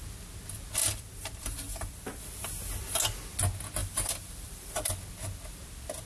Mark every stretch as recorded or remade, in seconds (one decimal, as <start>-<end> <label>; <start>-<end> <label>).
0.0-0.8 recorded; 0.8-2.2 remade; 2.2-3.8 recorded; 3.8-5.0 remade; 5.0-6.1 recorded